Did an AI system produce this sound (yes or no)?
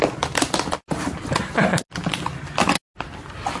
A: no